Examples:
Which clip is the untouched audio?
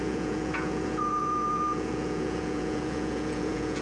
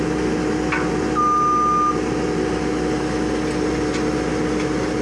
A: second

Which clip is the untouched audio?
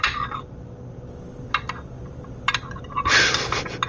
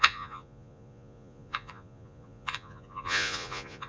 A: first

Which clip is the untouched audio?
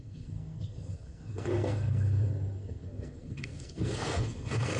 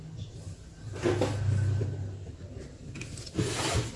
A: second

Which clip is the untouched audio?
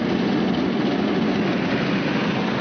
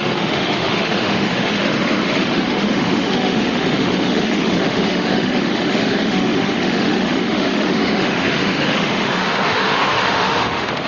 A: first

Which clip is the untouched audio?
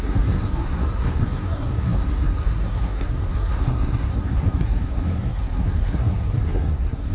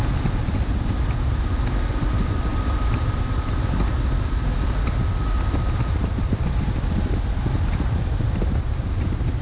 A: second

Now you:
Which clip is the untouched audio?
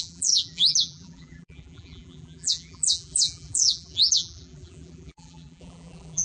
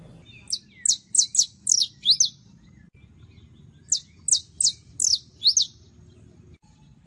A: second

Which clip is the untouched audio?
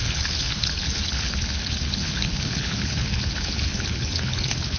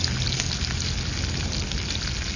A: second